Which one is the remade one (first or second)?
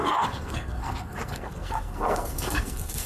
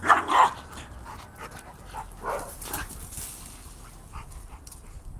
first